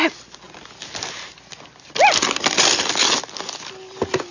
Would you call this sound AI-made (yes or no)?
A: no